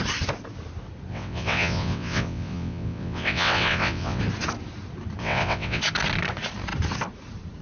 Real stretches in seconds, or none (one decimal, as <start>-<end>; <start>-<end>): 0.0-1.1; 4.2-5.2; 5.8-7.6